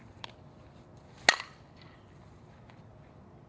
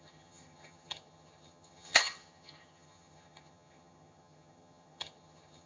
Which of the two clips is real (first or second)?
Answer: first